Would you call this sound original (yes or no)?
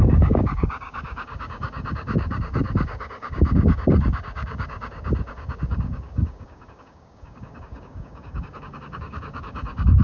no